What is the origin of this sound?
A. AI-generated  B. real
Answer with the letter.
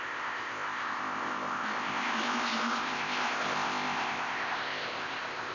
A